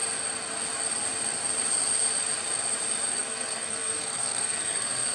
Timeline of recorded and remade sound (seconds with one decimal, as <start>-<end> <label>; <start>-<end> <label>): 0.0-3.1 recorded; 3.1-5.1 remade